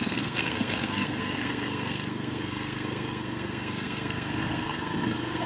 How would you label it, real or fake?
fake